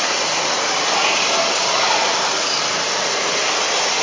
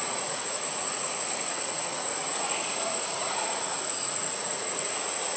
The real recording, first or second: first